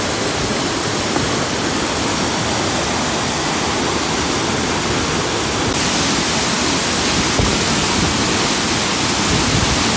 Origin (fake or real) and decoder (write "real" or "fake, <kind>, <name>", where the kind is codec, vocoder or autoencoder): real